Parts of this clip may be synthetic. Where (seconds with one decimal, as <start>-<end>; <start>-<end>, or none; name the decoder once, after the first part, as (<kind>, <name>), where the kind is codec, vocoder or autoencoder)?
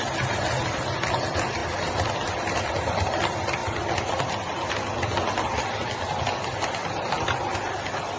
1.6-2.1 (vocoder, BigVGAN v2)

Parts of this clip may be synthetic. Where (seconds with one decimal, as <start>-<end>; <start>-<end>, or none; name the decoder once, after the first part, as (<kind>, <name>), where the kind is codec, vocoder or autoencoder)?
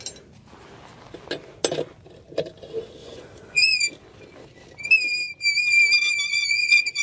3.0-3.8 (vocoder, Vocos); 6.3-7.0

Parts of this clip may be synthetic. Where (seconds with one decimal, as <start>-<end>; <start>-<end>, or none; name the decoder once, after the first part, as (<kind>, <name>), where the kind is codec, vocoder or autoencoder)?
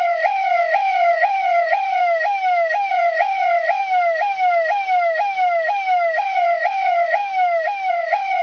0.0-2.0 (vocoder, WaveNeXt); 2.9-3.8; 6.2-7.2; 7.9-8.4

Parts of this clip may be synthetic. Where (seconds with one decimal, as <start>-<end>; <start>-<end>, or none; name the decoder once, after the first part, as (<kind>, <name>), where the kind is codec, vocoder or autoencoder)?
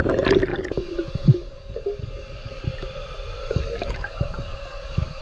0.5-2.6 (codec, DAC); 3.4-5.2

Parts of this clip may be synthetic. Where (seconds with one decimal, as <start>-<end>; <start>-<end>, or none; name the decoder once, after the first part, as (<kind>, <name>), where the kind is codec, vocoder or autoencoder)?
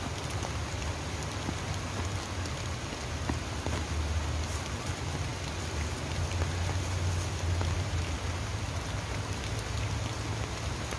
none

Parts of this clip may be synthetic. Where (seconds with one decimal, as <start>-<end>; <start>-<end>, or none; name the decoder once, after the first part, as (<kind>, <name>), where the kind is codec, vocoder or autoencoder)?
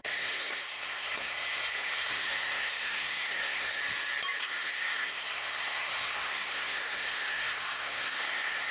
0.0-3.8 (codec, SNAC); 4.4-8.7